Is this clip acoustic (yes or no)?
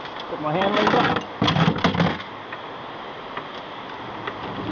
yes